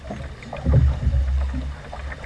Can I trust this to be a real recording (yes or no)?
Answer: yes